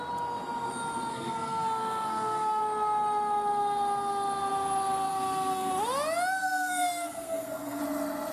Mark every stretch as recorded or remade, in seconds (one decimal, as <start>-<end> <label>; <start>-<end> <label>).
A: 0.0-1.1 recorded; 1.1-2.6 remade; 2.6-5.1 recorded; 5.1-5.7 remade; 5.7-6.4 recorded; 6.4-7.8 remade; 7.8-8.3 recorded